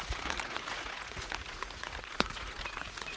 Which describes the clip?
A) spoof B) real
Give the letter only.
A